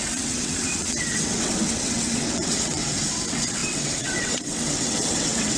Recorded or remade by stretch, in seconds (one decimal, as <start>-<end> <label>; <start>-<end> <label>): 0.0-5.6 remade